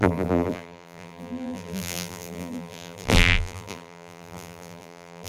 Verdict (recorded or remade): remade